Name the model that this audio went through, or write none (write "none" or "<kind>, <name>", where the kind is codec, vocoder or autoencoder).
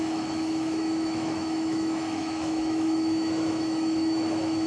autoencoder, DAC-VAE